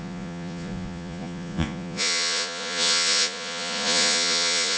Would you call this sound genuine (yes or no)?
no